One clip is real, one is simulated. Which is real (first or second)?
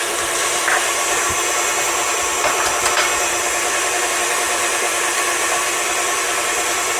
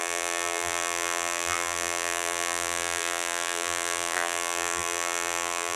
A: first